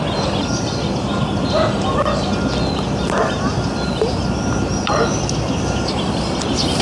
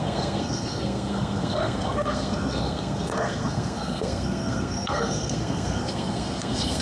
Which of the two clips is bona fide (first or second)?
first